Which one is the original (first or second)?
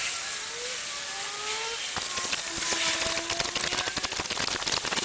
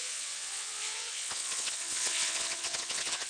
first